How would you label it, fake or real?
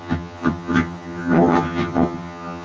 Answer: fake